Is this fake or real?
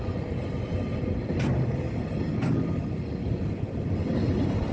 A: real